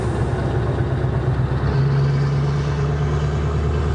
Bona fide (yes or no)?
yes